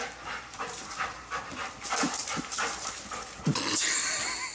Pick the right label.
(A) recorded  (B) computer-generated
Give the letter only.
A